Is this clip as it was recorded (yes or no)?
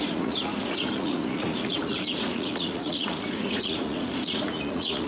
no